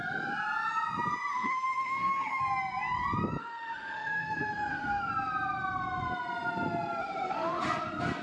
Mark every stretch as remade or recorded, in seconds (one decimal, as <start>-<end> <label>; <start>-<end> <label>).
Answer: 0.0-1.3 recorded; 1.3-2.4 remade; 2.4-3.4 recorded; 3.4-5.1 remade; 5.1-7.0 recorded; 7.0-7.6 remade; 7.6-8.2 recorded